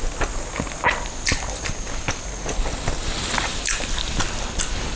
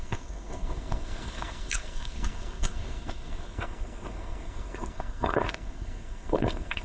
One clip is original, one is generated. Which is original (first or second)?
first